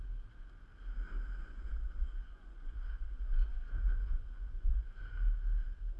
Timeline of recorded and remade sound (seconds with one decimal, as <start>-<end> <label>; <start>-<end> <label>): 0.0-1.4 recorded; 1.4-5.0 remade; 5.0-6.0 recorded